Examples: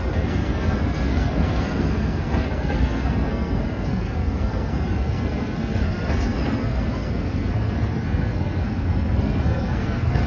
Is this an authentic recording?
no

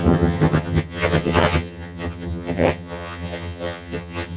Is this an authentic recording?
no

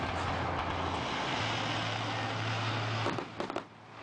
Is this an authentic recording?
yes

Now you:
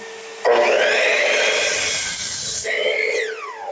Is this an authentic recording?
yes